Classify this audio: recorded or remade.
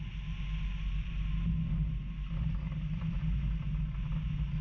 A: recorded